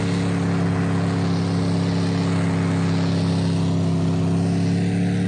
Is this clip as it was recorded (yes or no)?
yes